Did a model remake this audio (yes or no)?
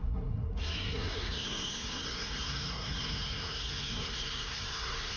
yes